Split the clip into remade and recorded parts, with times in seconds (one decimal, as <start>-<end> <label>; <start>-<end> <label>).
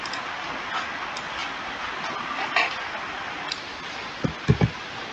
0.0-5.1 recorded